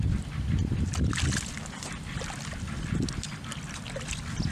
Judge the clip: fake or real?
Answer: real